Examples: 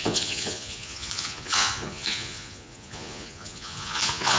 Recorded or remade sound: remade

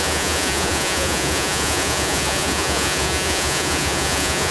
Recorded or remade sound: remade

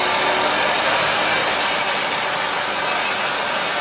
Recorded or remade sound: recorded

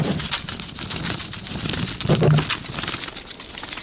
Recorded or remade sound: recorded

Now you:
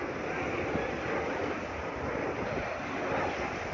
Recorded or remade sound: recorded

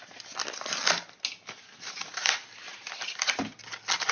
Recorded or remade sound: recorded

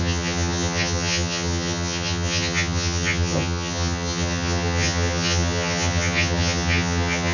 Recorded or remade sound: remade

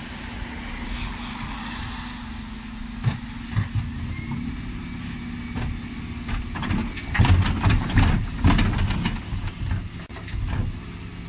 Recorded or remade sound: recorded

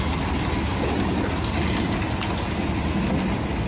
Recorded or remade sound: recorded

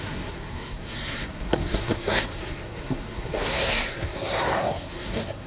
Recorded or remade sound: remade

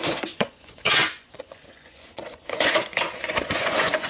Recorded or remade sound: remade